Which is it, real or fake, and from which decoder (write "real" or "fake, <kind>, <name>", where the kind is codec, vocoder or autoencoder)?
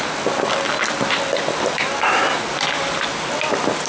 real